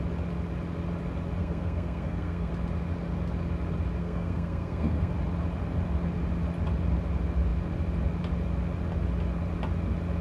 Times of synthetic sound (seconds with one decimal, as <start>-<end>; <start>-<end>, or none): 1.4-2.5; 4.0-5.1